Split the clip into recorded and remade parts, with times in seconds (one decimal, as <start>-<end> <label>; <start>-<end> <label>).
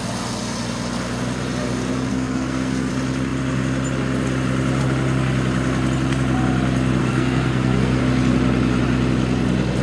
0.0-2.1 recorded; 2.1-2.9 remade; 2.9-7.0 recorded; 7.0-8.0 remade; 8.0-9.8 recorded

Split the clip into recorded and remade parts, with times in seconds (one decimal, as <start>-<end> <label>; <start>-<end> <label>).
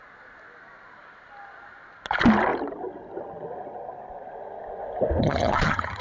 0.0-5.2 recorded; 5.2-6.0 remade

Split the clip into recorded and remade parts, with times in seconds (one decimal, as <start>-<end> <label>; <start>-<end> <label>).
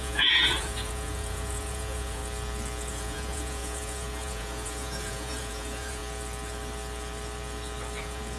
0.0-2.2 remade; 2.2-2.9 recorded; 2.9-6.0 remade; 6.0-8.0 recorded; 8.0-8.4 remade